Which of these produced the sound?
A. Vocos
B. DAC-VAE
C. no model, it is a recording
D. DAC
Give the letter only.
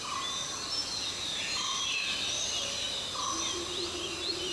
C